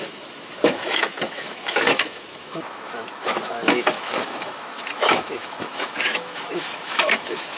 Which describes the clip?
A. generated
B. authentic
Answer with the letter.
A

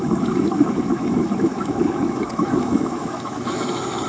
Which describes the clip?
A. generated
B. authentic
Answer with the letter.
A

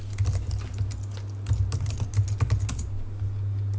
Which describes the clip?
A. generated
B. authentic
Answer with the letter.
B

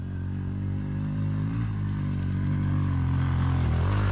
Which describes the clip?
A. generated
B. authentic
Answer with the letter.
B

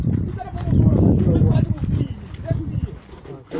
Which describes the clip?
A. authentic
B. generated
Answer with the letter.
A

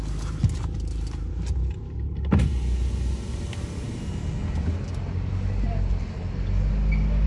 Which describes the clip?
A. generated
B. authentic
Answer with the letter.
B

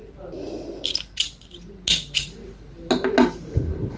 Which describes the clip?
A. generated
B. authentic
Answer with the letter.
B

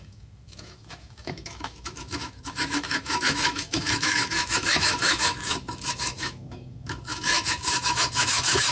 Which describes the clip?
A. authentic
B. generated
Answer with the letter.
B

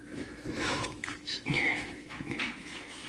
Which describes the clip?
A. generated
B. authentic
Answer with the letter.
A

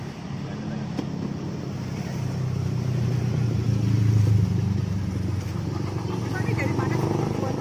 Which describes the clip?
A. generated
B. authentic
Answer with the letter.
B